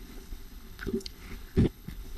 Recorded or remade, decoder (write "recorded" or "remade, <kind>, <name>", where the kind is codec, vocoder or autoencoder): remade, codec, HILCodec